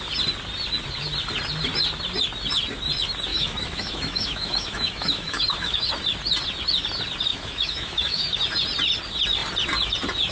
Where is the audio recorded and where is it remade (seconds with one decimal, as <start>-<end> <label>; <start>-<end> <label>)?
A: 0.0-3.3 recorded; 3.3-5.9 remade; 5.9-7.3 recorded; 7.3-8.4 remade; 8.4-10.3 recorded